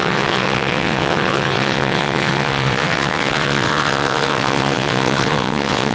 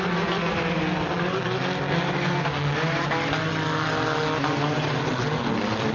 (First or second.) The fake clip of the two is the first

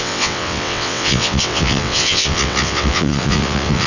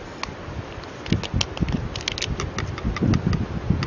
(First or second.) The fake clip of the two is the first